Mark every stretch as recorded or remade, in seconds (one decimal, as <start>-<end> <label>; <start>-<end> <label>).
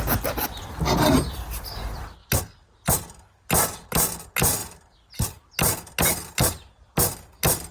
0.0-7.7 recorded